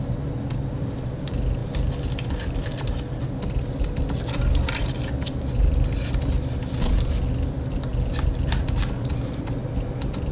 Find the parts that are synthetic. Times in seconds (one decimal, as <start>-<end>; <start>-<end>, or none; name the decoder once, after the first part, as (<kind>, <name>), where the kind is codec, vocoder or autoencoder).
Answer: none